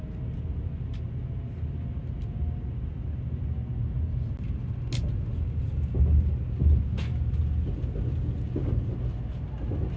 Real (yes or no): yes